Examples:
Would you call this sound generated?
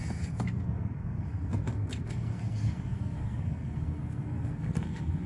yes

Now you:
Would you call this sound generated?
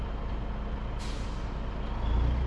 no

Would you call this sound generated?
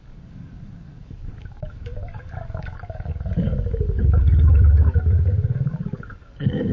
yes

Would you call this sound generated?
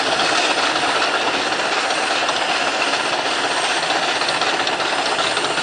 no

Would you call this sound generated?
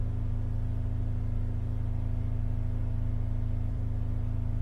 yes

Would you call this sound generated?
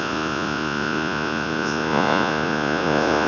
yes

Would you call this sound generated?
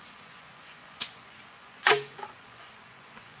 yes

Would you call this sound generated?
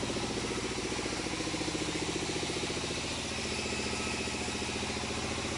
no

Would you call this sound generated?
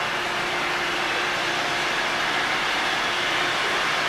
no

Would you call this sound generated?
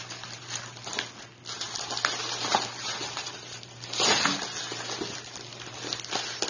no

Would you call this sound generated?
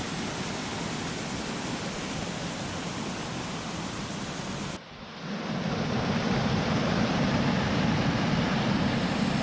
no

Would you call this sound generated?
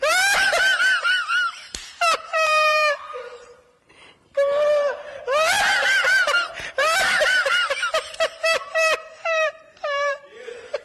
yes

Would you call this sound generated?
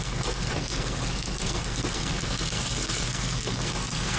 yes